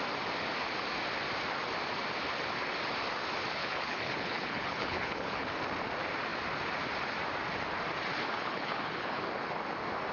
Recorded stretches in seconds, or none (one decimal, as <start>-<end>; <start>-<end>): 0.0-3.6; 5.6-8.1; 9.2-10.1